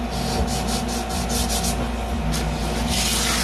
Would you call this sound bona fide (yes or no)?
yes